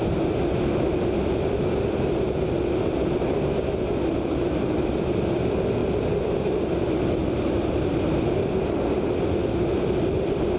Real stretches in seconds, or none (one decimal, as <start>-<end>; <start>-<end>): 0.0-10.6